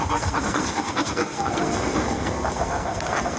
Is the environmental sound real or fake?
fake